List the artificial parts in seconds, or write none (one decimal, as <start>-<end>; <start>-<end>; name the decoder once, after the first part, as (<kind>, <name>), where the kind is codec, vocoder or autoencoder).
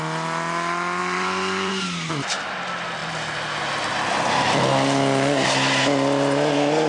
1.0-1.7 (vocoder, BigVGAN v2); 3.0-3.9